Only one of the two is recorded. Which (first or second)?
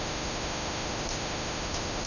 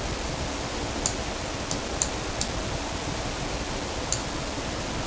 second